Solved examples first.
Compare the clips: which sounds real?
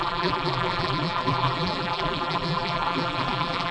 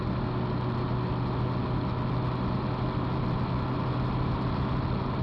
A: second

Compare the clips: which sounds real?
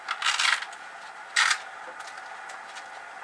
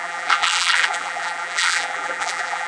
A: first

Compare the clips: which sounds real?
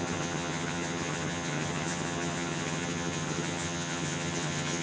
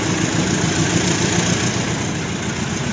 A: second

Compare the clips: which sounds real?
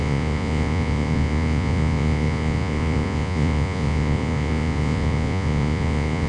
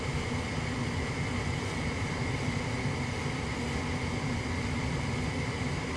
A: second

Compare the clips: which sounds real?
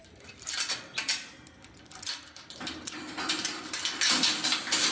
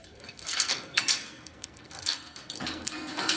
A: first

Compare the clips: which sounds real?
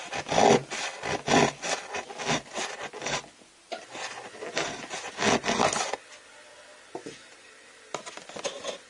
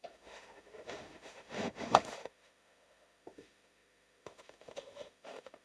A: first